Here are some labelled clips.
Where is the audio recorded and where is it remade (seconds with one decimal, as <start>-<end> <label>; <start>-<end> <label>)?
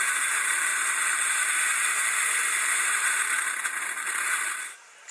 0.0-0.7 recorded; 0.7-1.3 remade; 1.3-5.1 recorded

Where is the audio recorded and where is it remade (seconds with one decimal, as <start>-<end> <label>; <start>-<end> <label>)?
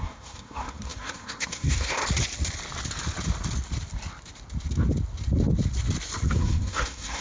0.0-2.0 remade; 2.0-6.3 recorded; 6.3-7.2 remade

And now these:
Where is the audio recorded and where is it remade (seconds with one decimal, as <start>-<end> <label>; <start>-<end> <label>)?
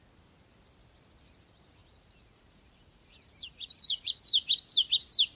0.0-1.8 recorded; 1.8-4.2 remade; 4.2-5.4 recorded